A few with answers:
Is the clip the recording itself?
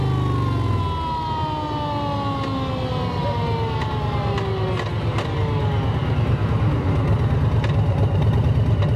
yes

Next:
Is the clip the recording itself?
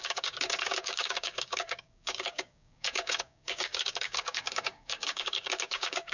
no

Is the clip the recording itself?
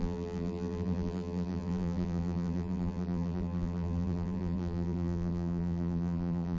no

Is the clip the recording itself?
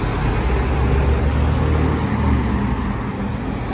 yes